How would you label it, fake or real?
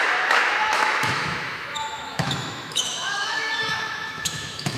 fake